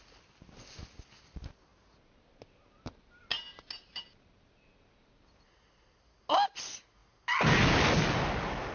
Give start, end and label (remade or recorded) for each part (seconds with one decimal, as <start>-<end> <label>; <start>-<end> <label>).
0.0-8.7 recorded